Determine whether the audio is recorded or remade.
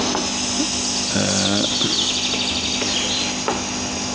recorded